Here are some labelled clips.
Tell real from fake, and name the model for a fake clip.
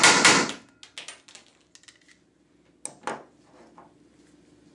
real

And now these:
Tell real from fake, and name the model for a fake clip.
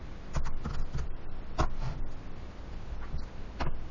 real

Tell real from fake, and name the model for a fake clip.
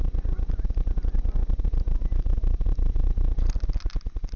real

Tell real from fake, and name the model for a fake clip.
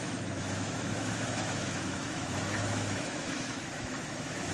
fake, autoencoder, DAC-VAE